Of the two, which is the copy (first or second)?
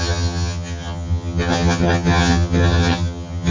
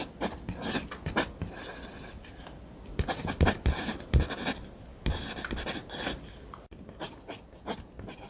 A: first